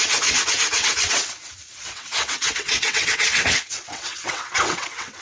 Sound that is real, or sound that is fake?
fake